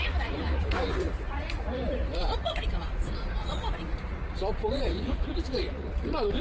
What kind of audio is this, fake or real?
fake